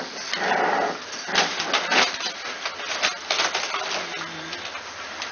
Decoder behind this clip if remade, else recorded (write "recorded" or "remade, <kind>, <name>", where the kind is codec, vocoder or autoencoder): recorded